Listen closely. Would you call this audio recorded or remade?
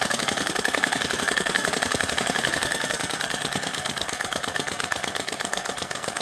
remade